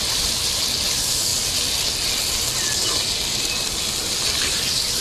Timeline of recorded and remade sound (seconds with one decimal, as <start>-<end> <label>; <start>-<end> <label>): 0.0-5.0 recorded